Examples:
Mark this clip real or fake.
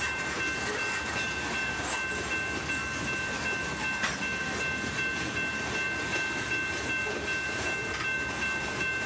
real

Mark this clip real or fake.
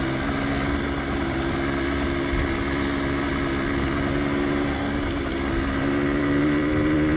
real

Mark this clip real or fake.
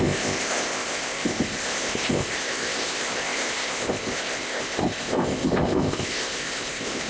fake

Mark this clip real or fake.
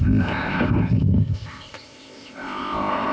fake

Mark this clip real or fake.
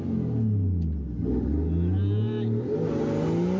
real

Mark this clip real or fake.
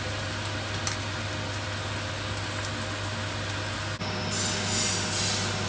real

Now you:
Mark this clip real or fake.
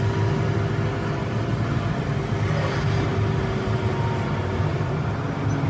real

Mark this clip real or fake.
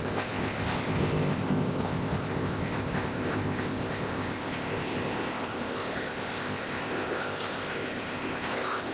fake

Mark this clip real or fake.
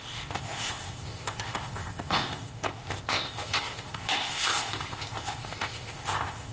fake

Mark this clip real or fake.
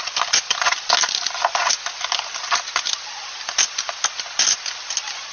real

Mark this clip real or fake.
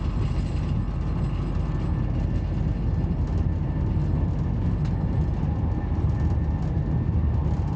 real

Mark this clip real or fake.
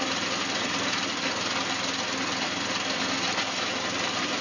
real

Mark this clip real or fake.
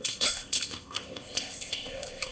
fake